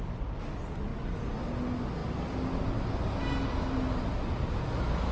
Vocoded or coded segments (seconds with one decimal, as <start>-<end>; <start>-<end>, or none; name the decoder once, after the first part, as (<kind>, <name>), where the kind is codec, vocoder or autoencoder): none